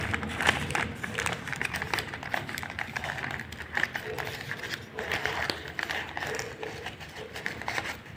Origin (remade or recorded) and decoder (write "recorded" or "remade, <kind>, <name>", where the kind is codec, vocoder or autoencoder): remade, vocoder, BigVGAN v2